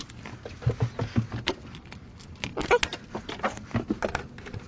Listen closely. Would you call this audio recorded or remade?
recorded